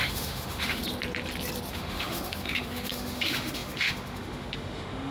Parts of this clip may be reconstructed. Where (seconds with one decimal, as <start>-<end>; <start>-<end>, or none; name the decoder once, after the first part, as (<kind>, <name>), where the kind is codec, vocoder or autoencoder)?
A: 0.0-0.8 (autoencoder, DAC-VAE); 1.7-5.1